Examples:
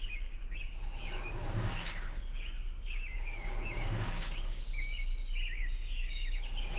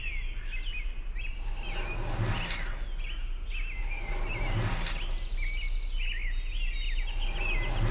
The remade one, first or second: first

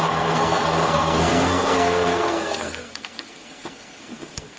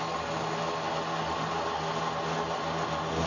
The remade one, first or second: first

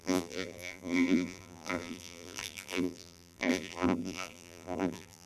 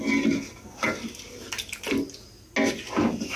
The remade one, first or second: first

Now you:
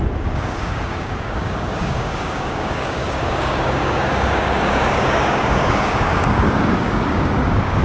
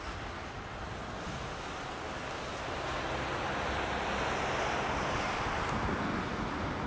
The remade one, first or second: first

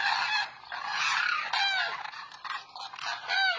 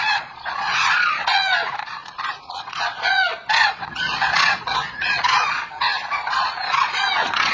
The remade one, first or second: second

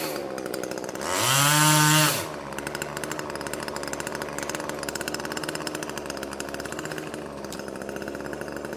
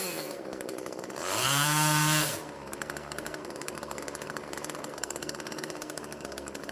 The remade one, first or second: second